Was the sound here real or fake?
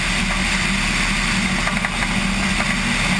real